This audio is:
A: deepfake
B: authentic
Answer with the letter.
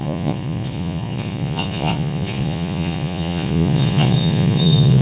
A